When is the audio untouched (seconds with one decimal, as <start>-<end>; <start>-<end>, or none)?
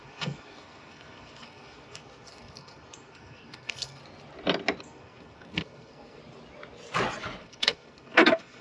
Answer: 4.0-4.8; 6.2-7.4